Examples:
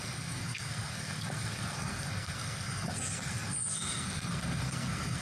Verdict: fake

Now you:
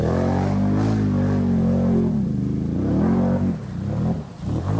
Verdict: real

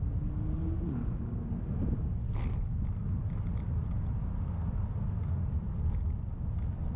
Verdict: real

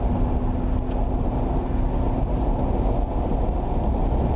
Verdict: real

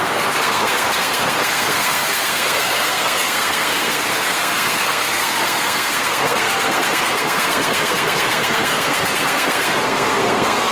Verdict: fake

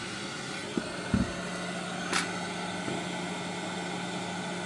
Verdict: real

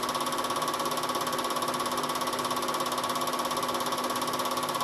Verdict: real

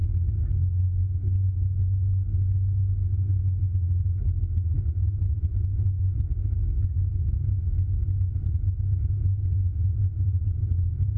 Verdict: real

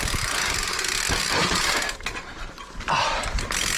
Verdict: real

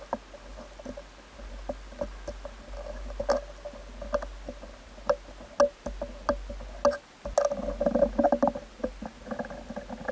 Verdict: real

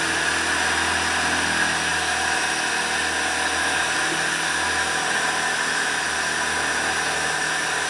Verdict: real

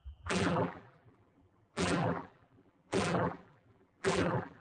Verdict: fake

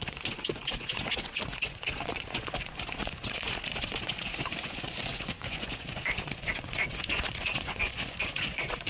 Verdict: fake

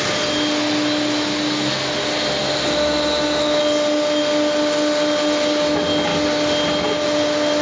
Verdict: real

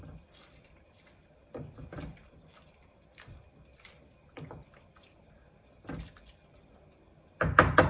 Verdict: fake